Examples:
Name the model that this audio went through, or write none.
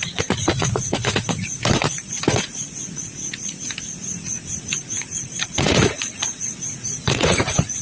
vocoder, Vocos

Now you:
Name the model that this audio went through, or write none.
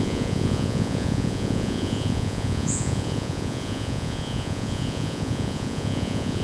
vocoder, Vocos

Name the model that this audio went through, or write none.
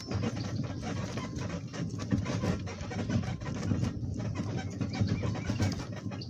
none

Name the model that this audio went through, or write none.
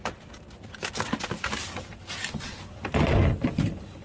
none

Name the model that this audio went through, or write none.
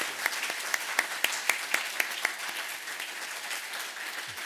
none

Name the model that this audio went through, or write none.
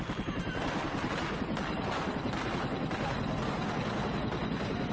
none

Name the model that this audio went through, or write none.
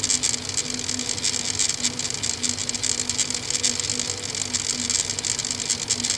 none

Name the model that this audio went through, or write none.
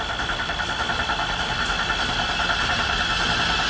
none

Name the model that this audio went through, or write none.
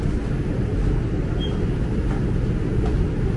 none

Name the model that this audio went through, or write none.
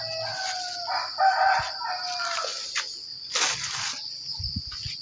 none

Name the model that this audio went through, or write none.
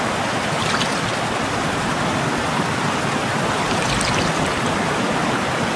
none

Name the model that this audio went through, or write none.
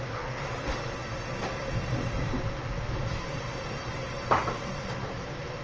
none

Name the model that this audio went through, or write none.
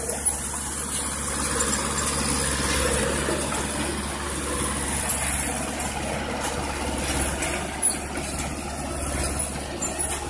none